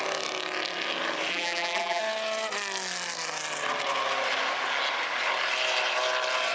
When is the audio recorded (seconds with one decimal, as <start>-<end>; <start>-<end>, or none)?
0.0-1.3; 2.0-6.5